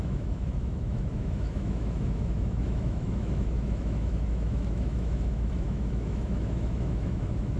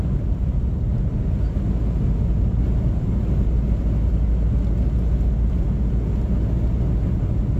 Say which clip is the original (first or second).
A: second